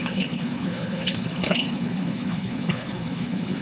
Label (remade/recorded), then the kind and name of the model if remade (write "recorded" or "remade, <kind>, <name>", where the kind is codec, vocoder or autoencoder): remade, codec, HILCodec